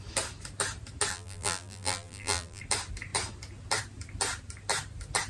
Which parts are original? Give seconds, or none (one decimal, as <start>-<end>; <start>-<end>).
0.0-1.1; 2.6-5.3